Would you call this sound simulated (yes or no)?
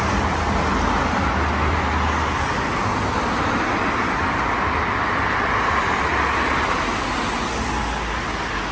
no